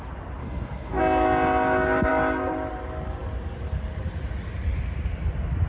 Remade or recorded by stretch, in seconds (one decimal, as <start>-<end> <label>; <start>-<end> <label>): 0.0-0.4 recorded; 0.4-1.0 remade; 1.0-5.7 recorded

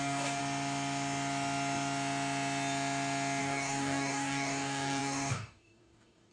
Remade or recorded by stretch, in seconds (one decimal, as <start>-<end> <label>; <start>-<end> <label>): 0.0-0.4 remade; 0.4-3.4 recorded; 3.4-6.3 remade